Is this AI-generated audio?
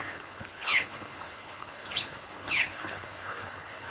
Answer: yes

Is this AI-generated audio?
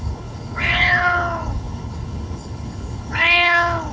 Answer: yes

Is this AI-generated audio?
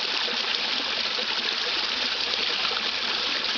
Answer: no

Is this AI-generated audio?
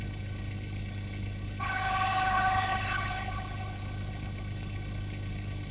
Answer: yes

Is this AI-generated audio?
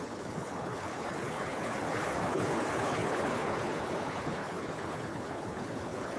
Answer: yes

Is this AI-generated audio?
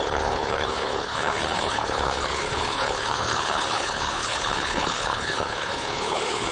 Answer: yes